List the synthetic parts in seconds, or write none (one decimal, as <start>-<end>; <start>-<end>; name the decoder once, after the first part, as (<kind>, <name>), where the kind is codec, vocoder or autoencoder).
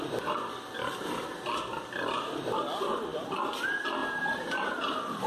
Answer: 4.0-5.3 (vocoder, BigVGAN v2)